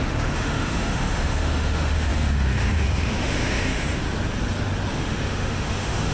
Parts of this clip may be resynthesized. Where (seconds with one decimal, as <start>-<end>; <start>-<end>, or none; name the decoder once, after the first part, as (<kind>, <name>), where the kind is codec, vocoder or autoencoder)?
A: 0.0-4.0 (autoencoder, DAC-VAE); 4.9-6.1

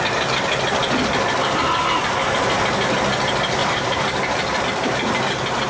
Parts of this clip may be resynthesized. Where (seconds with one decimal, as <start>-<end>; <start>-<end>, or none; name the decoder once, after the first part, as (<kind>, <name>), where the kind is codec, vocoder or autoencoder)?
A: 0.8-1.8 (vocoder, BigVGAN v2); 3.6-4.6